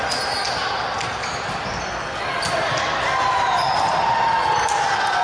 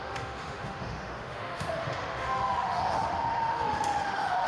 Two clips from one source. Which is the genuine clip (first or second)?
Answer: first